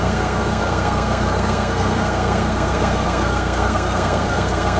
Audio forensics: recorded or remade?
remade